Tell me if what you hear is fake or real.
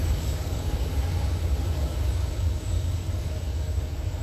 fake